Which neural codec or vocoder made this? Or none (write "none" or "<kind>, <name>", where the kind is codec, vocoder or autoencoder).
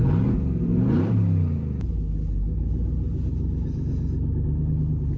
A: none